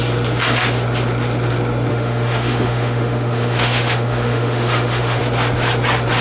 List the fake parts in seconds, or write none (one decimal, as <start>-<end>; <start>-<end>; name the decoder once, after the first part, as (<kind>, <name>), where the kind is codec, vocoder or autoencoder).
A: 1.9-5.2 (autoencoder, DAC-VAE)

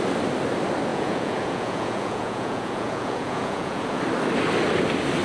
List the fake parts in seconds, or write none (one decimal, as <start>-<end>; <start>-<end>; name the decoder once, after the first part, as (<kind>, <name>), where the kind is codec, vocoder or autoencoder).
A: 0.9-4.0 (vocoder, Vocos)

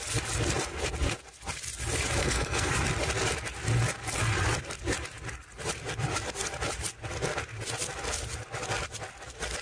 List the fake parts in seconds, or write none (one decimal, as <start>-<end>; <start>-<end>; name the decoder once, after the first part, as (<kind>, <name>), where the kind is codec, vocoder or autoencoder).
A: 2.2-2.7 (codec, SNAC)

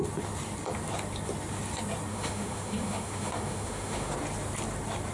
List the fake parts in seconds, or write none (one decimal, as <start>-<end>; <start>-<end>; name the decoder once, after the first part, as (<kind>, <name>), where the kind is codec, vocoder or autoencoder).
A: 2.1-4.1 (autoencoder, DAC-VAE)